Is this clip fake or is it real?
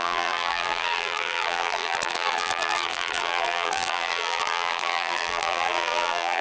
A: fake